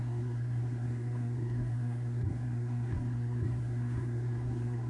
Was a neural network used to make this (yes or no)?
yes